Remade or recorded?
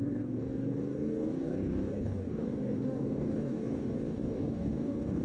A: remade